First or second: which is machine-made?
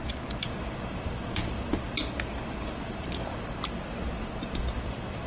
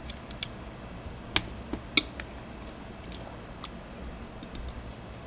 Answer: first